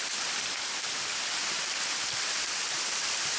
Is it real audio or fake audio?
real